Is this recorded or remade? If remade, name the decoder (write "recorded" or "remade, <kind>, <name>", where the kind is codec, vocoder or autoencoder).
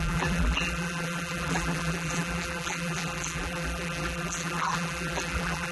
remade, vocoder, BigVGAN v2